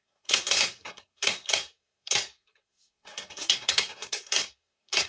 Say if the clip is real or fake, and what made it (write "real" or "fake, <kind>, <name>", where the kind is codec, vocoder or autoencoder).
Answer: fake, codec, SNAC